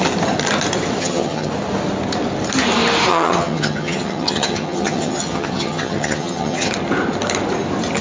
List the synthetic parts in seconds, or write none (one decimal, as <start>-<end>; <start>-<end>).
1.0-1.5; 3.1-6.7